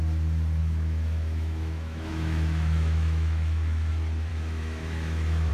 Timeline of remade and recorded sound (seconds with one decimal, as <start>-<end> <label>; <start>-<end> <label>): 0.0-0.6 recorded; 0.6-3.9 remade; 3.9-4.3 recorded; 4.3-5.5 remade